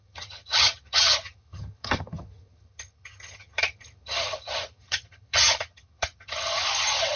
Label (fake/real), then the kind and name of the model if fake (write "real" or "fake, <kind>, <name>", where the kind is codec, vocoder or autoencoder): fake, vocoder, HiFi-GAN